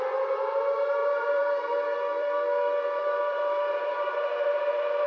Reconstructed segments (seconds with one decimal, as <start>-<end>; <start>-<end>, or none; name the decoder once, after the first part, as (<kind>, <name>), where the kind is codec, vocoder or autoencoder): 1.0-4.1 (vocoder, BigVGAN v2)